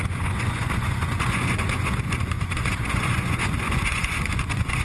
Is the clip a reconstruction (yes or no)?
yes